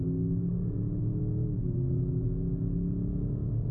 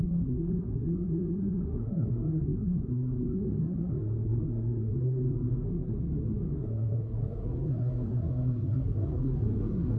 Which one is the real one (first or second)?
first